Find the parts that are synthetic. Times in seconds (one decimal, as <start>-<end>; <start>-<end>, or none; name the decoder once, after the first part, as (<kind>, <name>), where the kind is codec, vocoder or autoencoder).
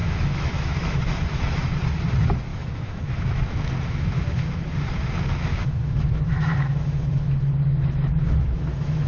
0.0-1.4 (autoencoder, DAC-VAE); 2.5-4.5; 5.5-9.1